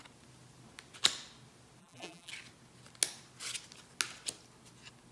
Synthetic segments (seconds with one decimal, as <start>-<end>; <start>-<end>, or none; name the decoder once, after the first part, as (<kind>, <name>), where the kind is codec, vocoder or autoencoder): 1.8-2.3 (vocoder, BigVGAN v2)